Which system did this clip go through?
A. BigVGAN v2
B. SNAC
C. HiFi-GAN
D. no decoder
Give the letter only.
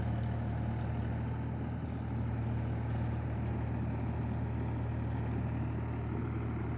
D